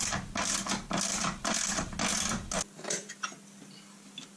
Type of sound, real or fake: real